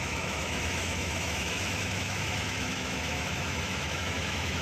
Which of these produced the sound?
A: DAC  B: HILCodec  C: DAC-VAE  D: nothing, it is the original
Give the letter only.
C